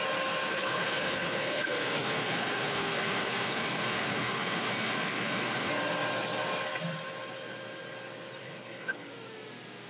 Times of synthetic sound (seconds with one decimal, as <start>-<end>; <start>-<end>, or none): 0.5-5.7; 8.4-9.1